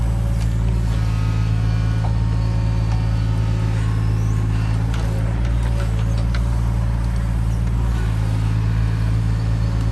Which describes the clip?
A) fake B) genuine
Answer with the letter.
B